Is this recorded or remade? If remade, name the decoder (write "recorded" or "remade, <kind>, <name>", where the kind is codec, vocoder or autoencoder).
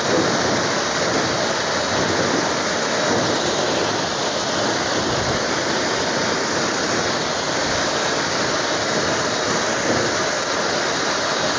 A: recorded